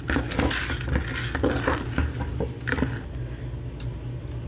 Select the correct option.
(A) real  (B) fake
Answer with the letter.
A